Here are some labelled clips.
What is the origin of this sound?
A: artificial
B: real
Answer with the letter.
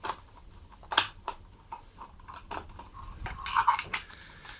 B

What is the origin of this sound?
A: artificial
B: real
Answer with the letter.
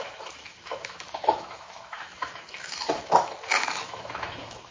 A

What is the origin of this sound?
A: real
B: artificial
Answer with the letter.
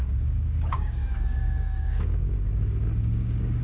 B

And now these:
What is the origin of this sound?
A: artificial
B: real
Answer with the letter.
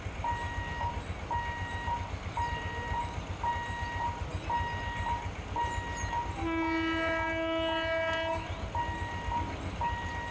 B